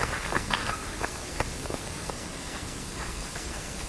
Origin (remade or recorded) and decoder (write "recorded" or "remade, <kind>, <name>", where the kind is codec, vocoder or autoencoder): remade, codec, SNAC